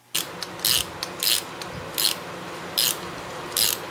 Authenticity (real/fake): real